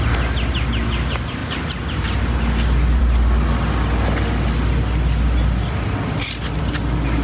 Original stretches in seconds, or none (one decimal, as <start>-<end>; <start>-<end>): 0.0-7.2